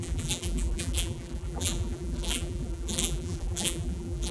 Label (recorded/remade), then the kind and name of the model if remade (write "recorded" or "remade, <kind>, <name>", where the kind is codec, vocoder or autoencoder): remade, vocoder, BigVGAN v2